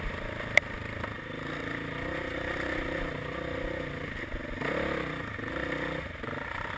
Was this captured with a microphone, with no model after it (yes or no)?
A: yes